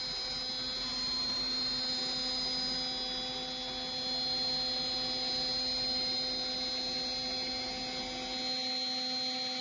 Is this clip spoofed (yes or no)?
no